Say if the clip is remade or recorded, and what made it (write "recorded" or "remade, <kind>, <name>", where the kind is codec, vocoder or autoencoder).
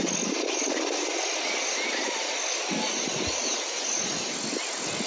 recorded